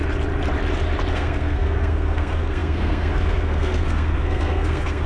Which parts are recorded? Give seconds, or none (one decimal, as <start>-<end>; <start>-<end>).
0.0-1.1